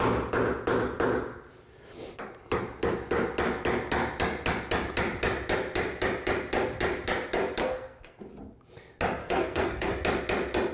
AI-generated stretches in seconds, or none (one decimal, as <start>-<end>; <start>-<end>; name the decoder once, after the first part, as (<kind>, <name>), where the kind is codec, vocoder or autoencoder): 7.6-8.2 (codec, SNAC); 9.2-9.9